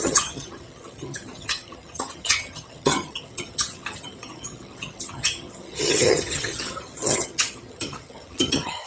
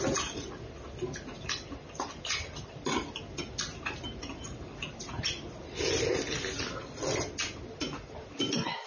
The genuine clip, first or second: second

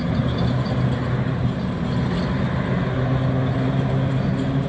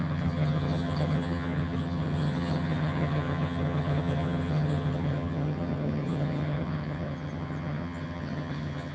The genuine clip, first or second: first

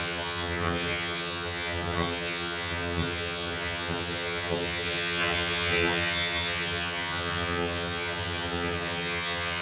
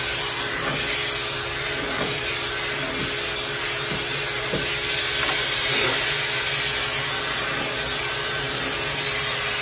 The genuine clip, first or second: second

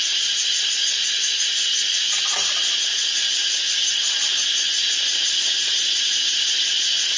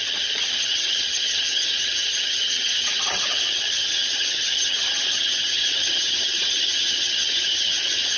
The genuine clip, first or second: first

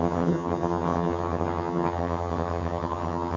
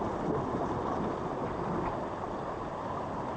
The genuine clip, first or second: second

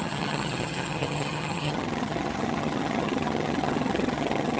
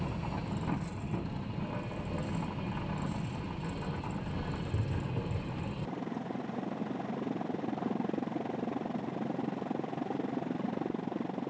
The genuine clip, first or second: second